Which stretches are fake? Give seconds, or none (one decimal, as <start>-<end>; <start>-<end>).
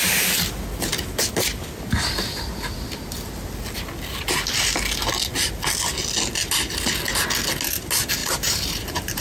8.2-9.2